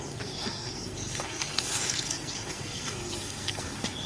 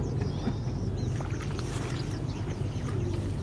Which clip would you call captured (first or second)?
second